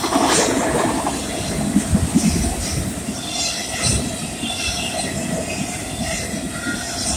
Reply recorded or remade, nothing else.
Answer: recorded